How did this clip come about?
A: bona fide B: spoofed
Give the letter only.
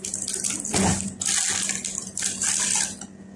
A